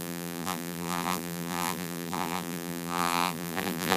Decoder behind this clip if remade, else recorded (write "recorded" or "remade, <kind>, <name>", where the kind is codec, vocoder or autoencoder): remade, vocoder, BigVGAN v2